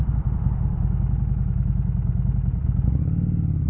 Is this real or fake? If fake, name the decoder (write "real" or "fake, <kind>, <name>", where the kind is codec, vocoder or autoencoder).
real